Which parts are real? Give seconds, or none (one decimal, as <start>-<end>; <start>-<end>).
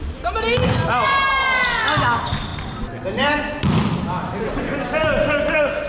0.0-5.9